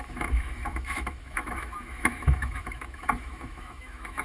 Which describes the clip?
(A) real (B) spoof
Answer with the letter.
B